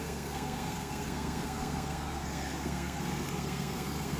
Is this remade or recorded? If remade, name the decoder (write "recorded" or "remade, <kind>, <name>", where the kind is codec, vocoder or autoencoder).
remade, codec, SNAC